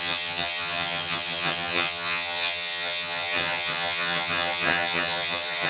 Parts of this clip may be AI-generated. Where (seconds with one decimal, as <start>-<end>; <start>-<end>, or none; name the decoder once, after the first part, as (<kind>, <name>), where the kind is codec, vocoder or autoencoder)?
0.0-5.7 (vocoder, HiFi-GAN)